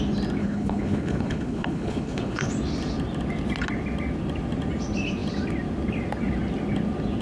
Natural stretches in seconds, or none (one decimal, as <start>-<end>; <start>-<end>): 0.0-0.4; 2.5-7.2